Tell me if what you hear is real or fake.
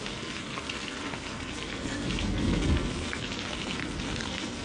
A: fake